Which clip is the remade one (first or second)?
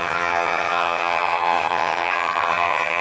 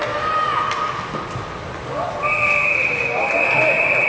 first